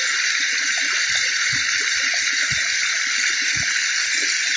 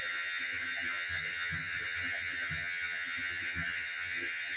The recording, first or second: first